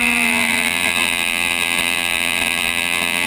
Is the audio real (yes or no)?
no